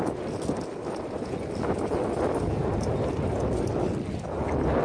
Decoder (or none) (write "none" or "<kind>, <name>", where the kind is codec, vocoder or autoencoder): none